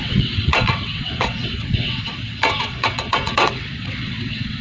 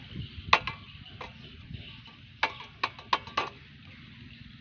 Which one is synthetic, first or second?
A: first